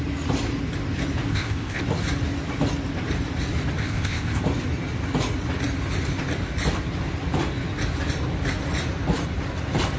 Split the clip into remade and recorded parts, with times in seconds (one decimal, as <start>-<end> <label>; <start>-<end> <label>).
0.0-1.3 recorded; 1.3-1.8 remade; 1.8-3.8 recorded; 3.8-4.4 remade; 4.4-10.0 recorded